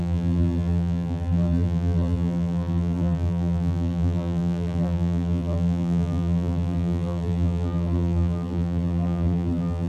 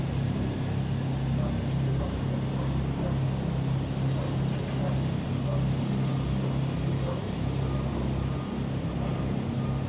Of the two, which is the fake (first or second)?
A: first